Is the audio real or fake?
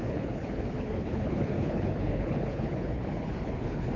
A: fake